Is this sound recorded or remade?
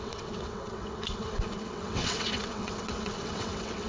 remade